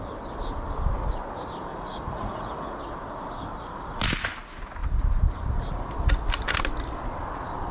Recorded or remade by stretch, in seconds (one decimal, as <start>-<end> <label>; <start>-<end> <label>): 0.0-1.7 recorded; 1.7-2.8 remade; 2.8-7.7 recorded